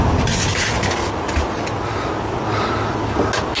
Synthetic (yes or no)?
no